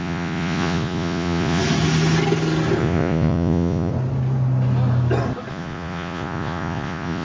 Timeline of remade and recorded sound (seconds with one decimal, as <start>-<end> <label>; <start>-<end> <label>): 0.0-1.6 remade; 1.6-2.8 recorded; 2.8-3.9 remade; 3.9-5.5 recorded; 5.5-7.2 remade